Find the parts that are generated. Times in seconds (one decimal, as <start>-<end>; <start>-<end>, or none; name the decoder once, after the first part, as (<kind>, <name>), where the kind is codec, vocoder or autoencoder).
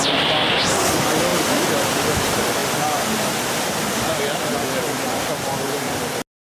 1.3-2.0 (vocoder, BigVGAN v2)